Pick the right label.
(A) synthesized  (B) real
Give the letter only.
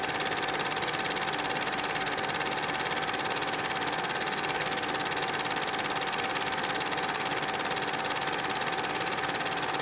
B